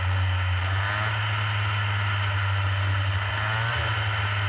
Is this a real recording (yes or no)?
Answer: yes